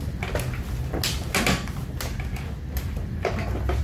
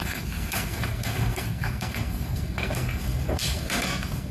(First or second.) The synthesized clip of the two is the second